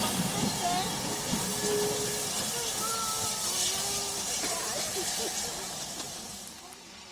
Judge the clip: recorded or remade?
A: recorded